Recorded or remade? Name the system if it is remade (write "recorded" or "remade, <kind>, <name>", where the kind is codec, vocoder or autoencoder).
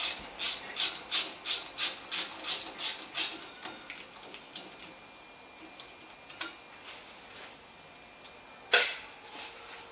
recorded